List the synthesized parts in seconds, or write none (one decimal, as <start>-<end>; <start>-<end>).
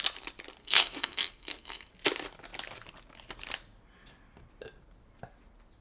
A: 0.6-1.9